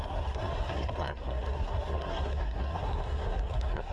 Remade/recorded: remade